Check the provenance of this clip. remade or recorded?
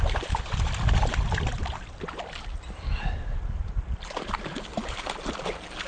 recorded